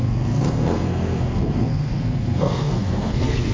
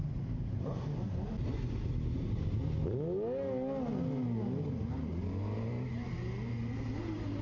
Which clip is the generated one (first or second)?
first